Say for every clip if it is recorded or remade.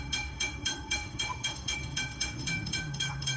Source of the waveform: remade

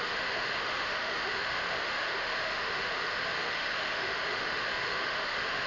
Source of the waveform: remade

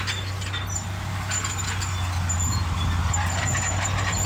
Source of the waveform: recorded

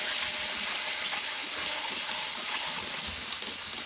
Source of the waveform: recorded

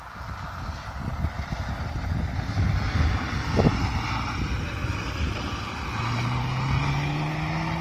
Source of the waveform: recorded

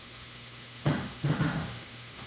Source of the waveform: remade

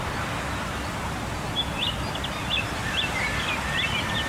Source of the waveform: recorded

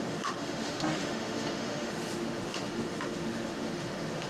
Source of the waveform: remade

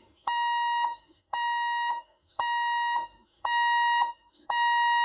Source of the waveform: remade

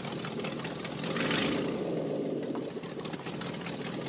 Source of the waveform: recorded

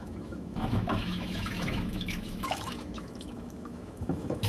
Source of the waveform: remade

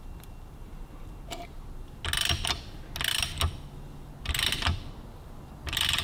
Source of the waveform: recorded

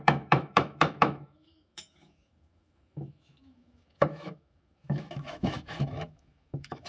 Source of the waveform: remade